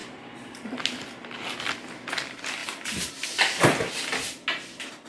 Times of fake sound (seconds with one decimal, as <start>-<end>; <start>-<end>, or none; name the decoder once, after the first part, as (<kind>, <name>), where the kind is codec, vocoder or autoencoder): 0.0-0.7 (vocoder, BigVGAN v2); 2.6-3.6